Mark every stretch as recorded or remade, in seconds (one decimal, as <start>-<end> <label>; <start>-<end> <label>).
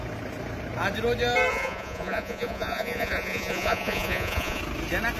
0.0-1.5 recorded; 1.5-4.6 remade; 4.6-5.2 recorded